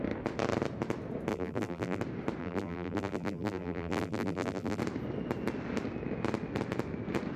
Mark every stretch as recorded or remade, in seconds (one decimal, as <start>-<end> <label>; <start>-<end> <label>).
0.0-1.3 recorded; 1.3-2.0 remade; 2.0-2.4 recorded; 2.4-4.8 remade; 4.8-7.4 recorded